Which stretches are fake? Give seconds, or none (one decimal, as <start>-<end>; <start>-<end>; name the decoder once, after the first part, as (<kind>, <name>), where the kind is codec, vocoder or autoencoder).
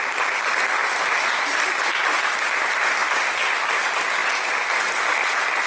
none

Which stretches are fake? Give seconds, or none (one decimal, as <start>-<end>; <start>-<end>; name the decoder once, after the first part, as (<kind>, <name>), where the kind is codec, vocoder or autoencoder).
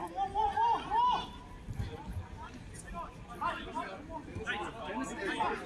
none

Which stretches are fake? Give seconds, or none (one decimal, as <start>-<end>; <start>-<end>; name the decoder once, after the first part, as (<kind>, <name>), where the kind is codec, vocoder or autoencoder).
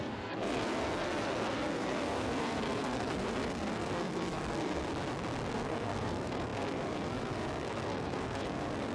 0.0-4.8 (codec, SNAC); 5.5-8.9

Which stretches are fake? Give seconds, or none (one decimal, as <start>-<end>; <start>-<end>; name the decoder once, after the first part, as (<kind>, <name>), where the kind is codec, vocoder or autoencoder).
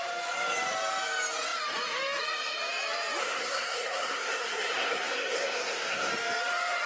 3.2-6.1 (codec, SNAC)